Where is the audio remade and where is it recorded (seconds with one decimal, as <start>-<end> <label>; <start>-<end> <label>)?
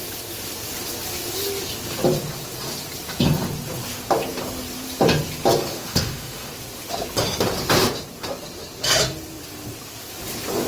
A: 0.0-5.7 recorded; 5.7-6.5 remade; 6.5-10.7 recorded